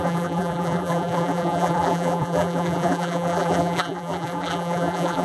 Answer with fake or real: fake